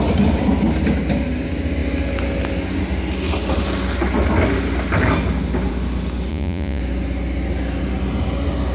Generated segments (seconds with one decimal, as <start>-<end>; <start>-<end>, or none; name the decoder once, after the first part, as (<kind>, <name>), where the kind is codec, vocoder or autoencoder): 6.3-6.8 (vocoder, Vocos)